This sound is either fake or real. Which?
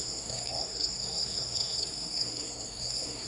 fake